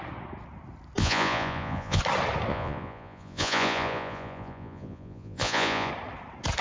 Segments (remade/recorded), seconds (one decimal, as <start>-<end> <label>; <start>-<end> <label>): 0.0-1.0 recorded; 1.0-2.0 remade; 2.0-2.5 recorded; 2.5-5.9 remade; 5.9-6.6 recorded